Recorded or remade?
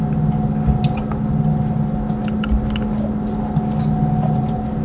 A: recorded